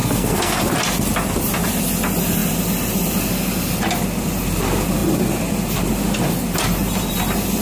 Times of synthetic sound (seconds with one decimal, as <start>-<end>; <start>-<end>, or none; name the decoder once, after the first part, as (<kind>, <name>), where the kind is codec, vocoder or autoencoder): 0.0-0.6 (codec, SNAC)